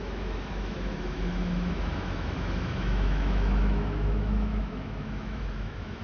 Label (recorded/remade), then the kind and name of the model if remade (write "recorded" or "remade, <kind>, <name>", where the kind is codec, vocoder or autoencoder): remade, autoencoder, DAC-VAE